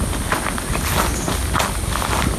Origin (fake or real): real